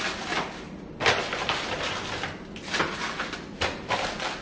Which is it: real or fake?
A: real